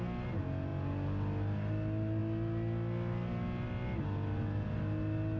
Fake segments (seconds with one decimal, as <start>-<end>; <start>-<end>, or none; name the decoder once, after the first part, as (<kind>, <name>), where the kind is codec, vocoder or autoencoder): none